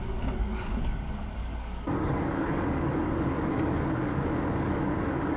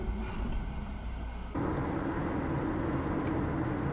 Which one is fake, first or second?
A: first